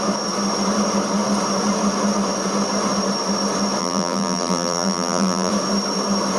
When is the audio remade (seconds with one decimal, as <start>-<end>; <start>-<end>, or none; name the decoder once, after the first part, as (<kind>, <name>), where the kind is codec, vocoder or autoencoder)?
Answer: 3.8-5.5 (vocoder, BigVGAN v2)